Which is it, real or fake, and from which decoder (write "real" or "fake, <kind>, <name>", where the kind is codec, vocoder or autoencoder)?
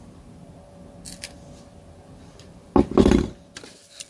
real